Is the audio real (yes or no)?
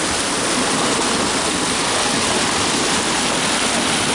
yes